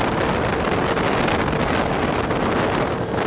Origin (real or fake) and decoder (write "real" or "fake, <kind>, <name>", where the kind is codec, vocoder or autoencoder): real